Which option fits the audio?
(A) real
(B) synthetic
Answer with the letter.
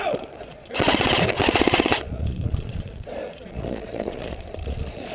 B